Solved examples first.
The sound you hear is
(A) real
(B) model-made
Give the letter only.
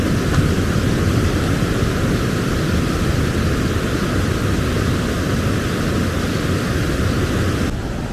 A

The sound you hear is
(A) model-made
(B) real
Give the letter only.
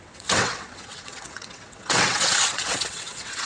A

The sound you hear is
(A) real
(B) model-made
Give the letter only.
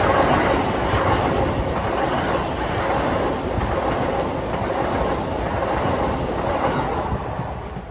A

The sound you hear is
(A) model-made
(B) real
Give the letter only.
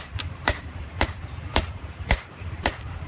A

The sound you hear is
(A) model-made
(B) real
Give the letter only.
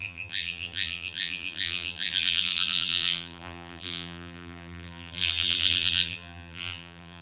A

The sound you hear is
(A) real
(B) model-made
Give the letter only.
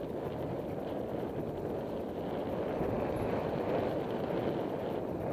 A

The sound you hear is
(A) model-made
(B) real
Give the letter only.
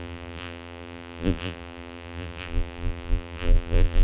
A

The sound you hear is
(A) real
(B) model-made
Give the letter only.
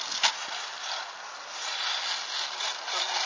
A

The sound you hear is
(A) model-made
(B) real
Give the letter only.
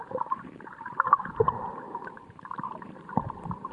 A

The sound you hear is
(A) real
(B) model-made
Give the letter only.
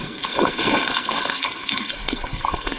B